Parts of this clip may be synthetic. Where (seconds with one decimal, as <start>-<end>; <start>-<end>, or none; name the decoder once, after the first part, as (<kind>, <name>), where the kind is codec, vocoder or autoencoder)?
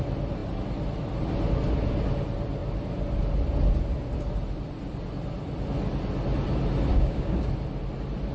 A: 6.9-7.5 (codec, DAC)